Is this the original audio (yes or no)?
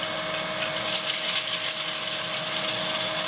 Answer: yes